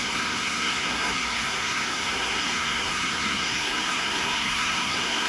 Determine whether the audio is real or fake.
fake